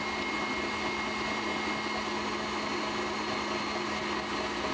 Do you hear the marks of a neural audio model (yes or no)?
no